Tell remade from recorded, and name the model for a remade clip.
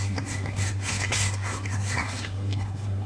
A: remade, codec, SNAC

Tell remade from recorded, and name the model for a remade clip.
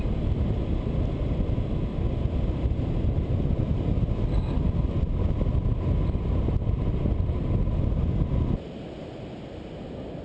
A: recorded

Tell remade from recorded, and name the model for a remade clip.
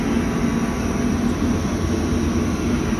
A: recorded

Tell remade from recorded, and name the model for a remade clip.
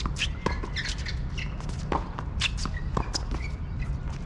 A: recorded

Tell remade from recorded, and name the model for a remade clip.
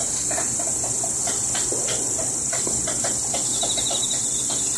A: recorded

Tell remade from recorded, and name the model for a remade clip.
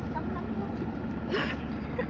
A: recorded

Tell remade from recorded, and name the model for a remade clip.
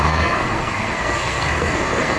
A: remade, codec, SNAC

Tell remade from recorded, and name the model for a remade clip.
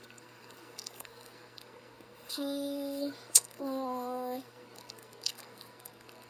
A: remade, codec, SNAC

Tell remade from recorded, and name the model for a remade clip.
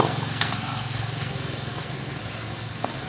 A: remade, codec, SNAC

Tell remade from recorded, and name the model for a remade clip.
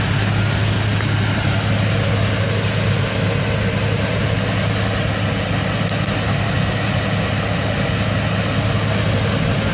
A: recorded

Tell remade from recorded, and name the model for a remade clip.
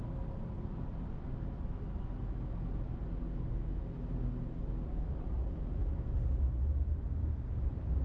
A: recorded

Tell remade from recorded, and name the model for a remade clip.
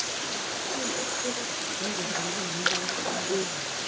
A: recorded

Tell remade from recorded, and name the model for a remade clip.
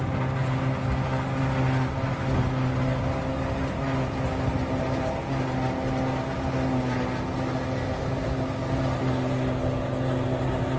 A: recorded